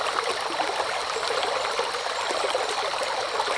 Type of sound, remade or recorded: recorded